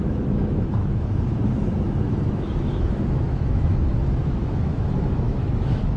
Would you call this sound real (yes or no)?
no